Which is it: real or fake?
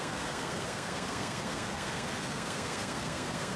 fake